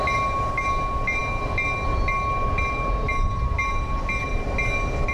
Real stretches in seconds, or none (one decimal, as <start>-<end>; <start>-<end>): 0.0-5.1